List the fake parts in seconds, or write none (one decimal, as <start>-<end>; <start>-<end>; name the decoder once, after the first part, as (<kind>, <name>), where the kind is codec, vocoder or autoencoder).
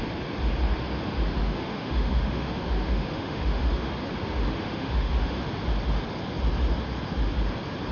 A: 1.4-3.9 (autoencoder, DAC-VAE); 4.5-5.4